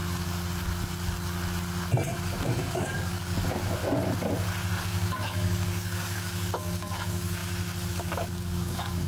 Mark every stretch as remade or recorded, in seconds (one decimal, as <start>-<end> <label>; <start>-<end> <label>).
0.0-2.3 recorded; 2.3-3.8 remade; 3.8-4.8 recorded; 4.8-7.4 remade; 7.4-7.9 recorded; 7.9-9.1 remade